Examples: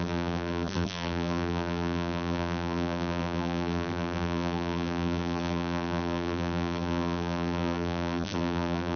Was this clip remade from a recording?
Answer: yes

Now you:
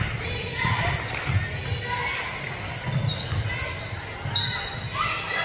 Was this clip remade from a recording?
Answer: no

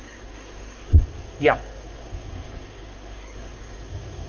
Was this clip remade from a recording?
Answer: yes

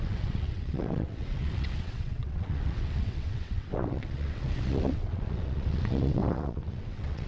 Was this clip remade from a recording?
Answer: yes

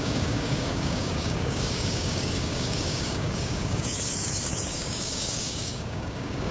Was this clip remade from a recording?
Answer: yes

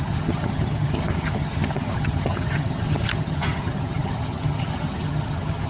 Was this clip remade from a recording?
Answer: yes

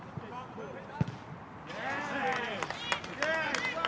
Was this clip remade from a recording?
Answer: no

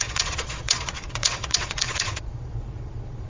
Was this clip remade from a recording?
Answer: yes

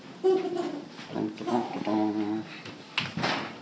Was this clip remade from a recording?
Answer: no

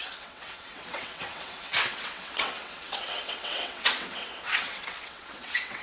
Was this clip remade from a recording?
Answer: yes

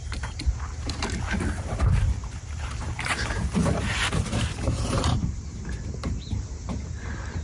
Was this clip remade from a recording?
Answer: yes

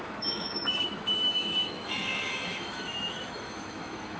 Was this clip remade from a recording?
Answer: yes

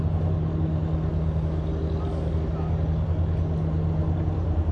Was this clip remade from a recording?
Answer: no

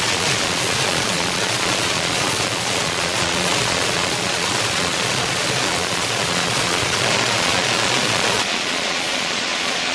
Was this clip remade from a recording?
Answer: yes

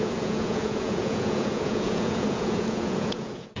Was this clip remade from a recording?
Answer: yes